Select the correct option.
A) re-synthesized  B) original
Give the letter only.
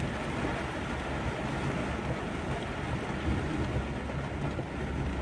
B